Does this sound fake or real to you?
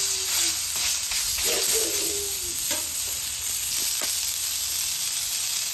real